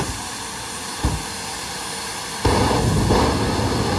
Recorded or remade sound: recorded